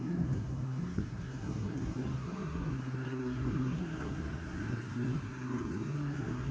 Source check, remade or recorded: remade